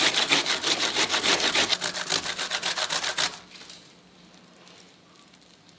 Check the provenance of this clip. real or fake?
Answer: real